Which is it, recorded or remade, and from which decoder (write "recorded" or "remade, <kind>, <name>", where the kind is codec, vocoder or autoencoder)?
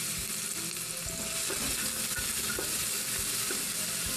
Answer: recorded